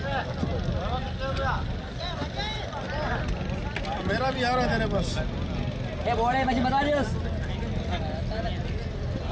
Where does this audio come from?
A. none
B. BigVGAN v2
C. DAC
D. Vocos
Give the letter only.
A